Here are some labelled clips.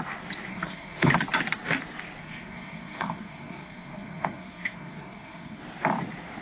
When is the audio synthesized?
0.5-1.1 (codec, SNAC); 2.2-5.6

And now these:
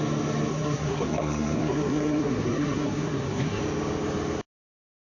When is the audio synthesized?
0.5-3.6 (codec, SNAC)

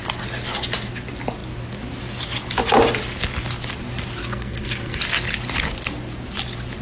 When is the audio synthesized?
4.2-5.0 (codec, SNAC)

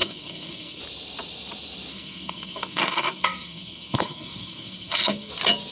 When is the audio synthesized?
0.0-0.8 (codec, SNAC); 1.9-5.3

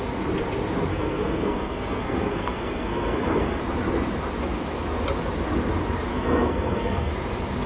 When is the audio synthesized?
0.9-3.6 (codec, SNAC); 6.1-7.1